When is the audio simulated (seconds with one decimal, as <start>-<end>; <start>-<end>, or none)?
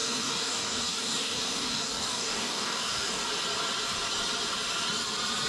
0.0-3.3